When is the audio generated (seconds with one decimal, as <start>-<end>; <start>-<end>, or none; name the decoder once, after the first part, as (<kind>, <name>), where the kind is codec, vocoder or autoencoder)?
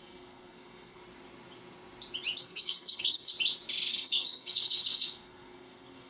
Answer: 0.0-1.0 (codec, SNAC); 2.4-3.3; 3.9-6.1